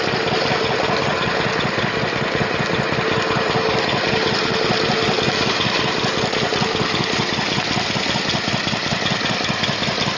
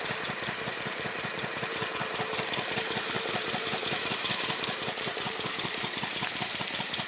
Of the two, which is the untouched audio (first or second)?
first